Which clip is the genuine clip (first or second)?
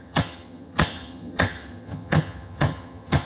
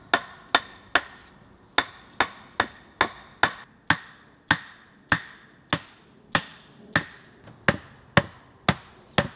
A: second